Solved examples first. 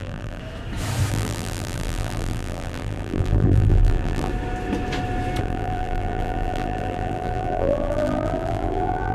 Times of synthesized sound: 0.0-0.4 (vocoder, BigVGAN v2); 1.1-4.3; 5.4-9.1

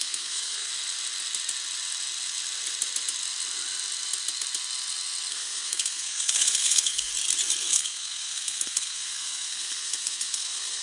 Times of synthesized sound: 0.0-0.7 (codec, SNAC); 5.3-7.1; 7.7-10.8

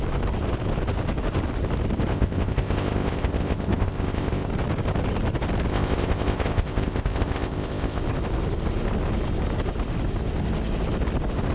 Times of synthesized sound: 2.1-4.5 (codec, ZipCodec); 5.7-8.0

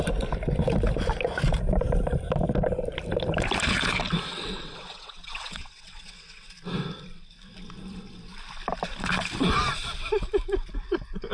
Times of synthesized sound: 4.3-6.5 (vocoder, WaveNeXt)

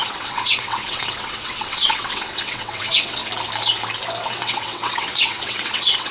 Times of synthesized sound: 0.0-3.2 (vocoder, WaveNeXt); 4.2-6.1